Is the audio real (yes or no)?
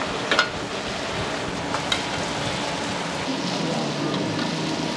yes